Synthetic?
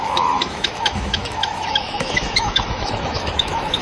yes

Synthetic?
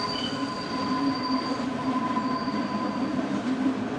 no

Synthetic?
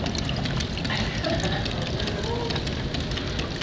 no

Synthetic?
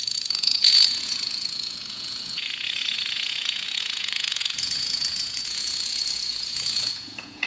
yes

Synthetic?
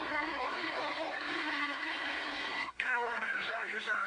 yes